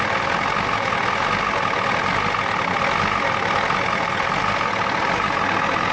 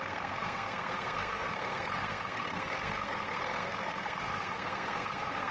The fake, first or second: second